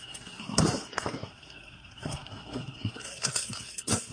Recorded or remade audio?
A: remade